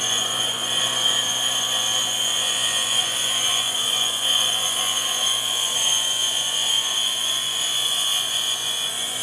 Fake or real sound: fake